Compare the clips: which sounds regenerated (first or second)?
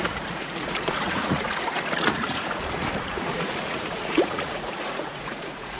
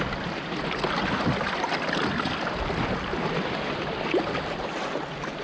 first